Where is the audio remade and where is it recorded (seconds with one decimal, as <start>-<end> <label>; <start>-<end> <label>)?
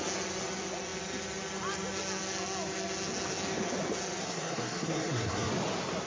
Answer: 0.0-4.2 recorded; 4.2-5.5 remade; 5.5-6.1 recorded